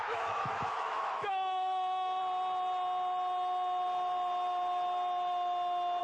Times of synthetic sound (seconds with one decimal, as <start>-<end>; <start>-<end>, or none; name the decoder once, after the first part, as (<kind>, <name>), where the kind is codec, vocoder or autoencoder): 0.0-2.2 (autoencoder, DAC-VAE)